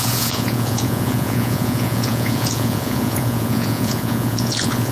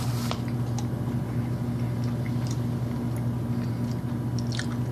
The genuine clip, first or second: second